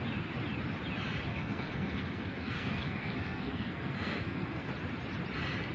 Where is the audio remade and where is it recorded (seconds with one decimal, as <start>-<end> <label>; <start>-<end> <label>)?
0.0-1.3 recorded; 1.3-4.7 remade; 4.7-5.7 recorded